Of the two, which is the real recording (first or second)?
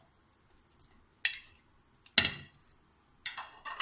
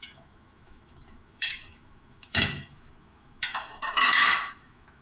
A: first